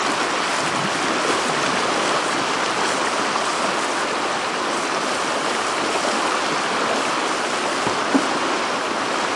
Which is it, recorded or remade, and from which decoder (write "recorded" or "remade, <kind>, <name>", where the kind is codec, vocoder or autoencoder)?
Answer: recorded